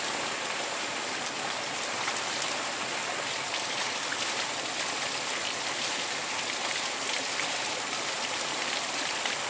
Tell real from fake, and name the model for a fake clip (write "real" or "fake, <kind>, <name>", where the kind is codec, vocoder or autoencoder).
real